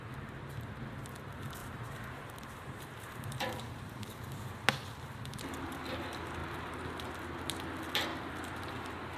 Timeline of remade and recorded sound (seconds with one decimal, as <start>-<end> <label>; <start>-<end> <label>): 0.0-1.6 recorded; 1.6-4.5 remade; 4.5-9.2 recorded